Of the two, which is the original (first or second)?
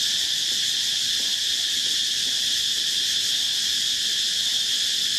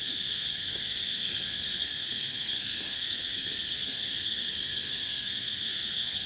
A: first